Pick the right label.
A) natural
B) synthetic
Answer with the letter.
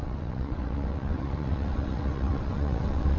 B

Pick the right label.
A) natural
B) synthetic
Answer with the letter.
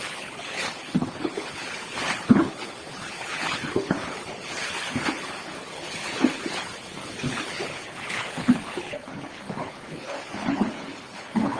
B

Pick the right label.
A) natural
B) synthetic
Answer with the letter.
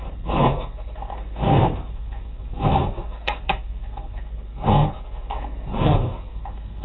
B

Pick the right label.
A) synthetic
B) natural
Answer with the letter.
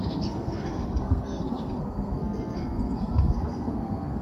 A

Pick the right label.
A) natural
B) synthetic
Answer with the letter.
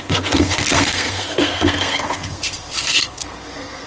B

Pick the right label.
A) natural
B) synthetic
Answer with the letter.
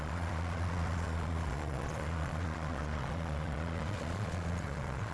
B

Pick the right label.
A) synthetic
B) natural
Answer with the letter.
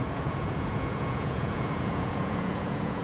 A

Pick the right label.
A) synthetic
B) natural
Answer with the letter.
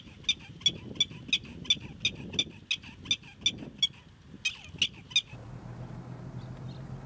B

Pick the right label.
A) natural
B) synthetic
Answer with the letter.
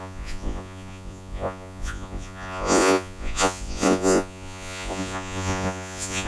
B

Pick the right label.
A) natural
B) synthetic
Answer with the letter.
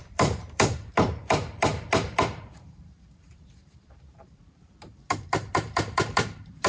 B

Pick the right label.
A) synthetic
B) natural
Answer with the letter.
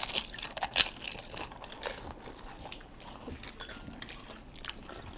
A